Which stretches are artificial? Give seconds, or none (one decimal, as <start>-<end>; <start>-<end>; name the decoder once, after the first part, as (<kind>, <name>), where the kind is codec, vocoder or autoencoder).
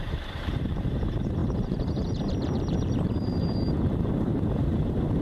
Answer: 0.0-5.2 (vocoder, BigVGAN v2)